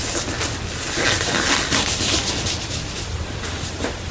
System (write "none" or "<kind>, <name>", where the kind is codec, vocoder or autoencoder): none